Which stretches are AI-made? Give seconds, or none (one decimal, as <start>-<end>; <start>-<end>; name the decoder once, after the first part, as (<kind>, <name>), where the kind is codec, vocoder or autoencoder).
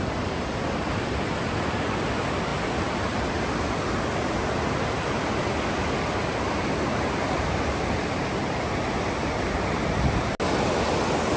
none